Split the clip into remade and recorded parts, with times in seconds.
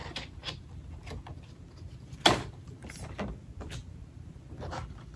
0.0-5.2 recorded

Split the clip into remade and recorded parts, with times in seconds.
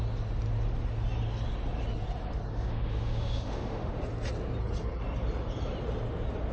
0.0-2.5 recorded; 2.5-3.9 remade; 3.9-6.5 recorded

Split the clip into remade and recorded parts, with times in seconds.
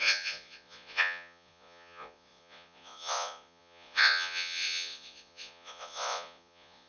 0.0-6.9 remade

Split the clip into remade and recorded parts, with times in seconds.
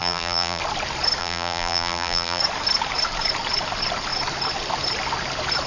0.0-0.6 remade; 0.6-1.2 recorded; 1.2-2.4 remade; 2.4-5.7 recorded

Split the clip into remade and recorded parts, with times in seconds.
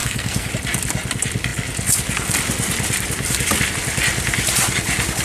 0.0-0.5 remade; 0.5-5.2 recorded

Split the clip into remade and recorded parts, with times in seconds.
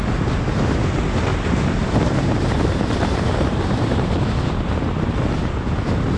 0.0-1.3 recorded; 1.3-4.6 remade; 4.6-6.2 recorded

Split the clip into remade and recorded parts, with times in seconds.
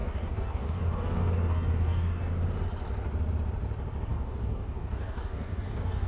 0.0-2.3 remade; 2.3-4.1 recorded; 4.1-6.1 remade